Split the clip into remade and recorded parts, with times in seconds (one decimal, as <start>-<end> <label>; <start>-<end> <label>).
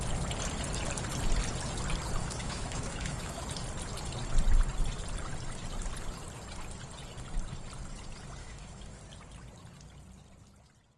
0.0-2.2 recorded; 2.2-3.4 remade; 3.4-8.4 recorded; 8.4-9.0 remade; 9.0-11.0 recorded